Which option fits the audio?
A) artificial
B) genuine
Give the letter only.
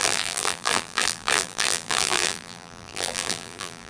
A